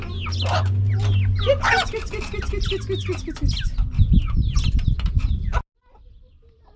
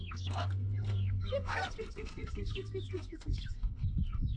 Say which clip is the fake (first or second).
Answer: second